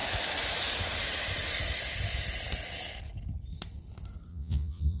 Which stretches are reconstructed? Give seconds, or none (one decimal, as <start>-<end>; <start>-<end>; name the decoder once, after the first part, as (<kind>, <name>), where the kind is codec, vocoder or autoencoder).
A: 4.3-5.0 (vocoder, Vocos)